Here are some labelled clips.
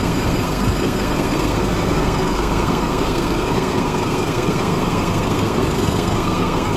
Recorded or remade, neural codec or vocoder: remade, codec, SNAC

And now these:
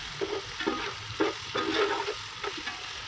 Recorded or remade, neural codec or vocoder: recorded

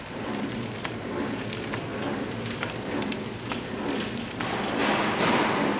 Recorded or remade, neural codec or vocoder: recorded